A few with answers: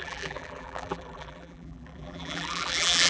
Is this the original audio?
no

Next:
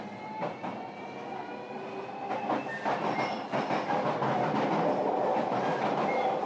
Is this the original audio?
yes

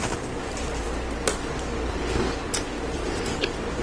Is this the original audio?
no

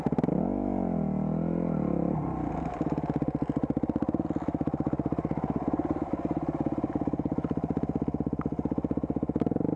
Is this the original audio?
yes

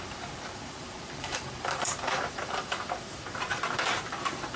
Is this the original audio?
no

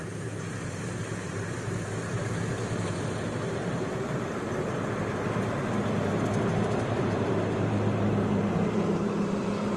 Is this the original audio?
no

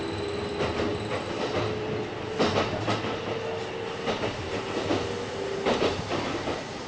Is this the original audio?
yes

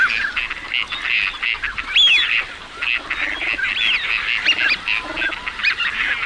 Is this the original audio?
yes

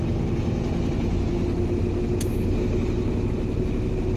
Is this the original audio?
yes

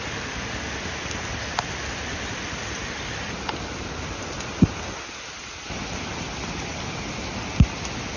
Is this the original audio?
yes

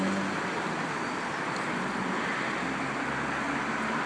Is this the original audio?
yes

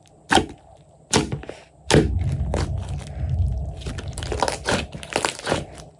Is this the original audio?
yes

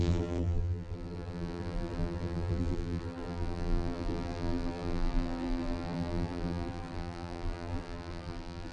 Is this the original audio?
no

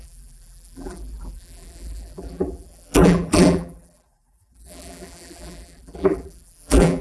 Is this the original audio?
no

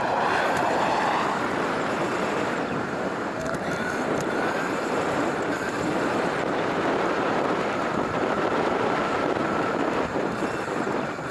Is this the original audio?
no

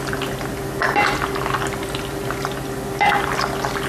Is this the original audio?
yes